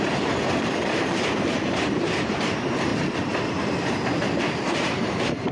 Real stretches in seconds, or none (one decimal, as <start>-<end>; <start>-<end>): 2.9-4.5